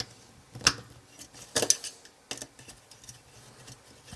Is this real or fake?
real